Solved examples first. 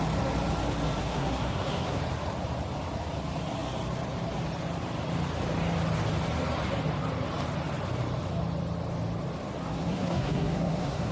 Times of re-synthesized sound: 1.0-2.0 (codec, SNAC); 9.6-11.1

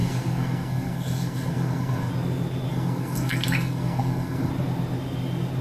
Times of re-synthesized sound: 0.0-2.1 (codec, SNAC); 2.7-4.5

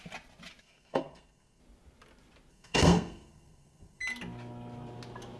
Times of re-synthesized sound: 0.6-1.6 (codec, SNAC); 2.5-4.0

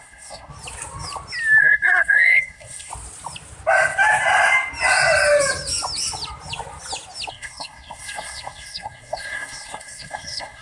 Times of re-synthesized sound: 0.0-0.5 (codec, SNAC); 1.6-2.9; 7.3-10.6

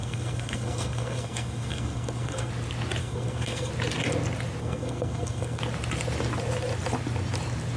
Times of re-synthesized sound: 0.0-2.5 (codec, SNAC); 3.0-3.7; 4.6-5.6

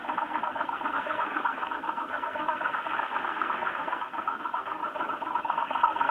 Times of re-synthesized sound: 0.0-4.8 (codec, SNAC); 5.4-6.1